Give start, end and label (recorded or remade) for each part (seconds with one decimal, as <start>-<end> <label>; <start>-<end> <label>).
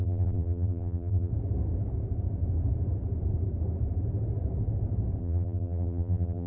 0.0-1.3 remade; 1.3-5.2 recorded; 5.2-6.5 remade